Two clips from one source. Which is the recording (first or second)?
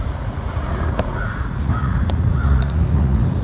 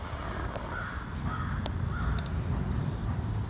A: second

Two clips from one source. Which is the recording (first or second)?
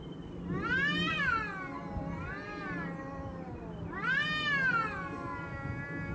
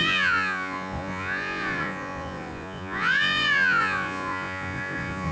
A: first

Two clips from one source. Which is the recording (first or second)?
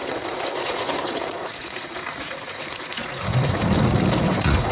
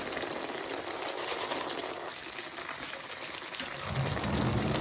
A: second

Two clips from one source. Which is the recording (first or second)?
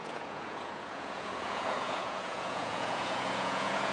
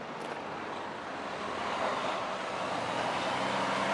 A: second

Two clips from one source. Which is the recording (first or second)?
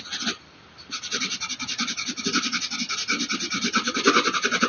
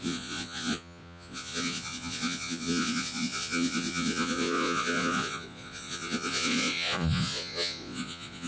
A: first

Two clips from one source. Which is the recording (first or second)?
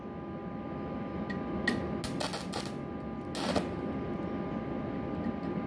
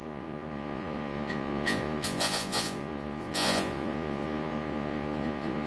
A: first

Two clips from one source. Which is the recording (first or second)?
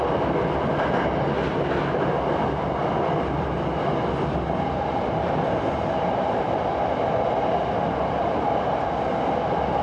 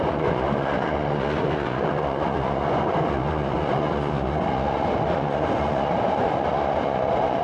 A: first